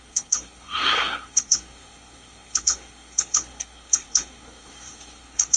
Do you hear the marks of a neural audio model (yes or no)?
yes